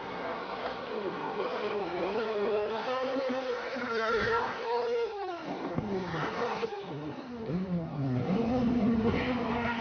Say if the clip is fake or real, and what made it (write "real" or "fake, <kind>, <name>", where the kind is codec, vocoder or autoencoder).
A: fake, codec, SNAC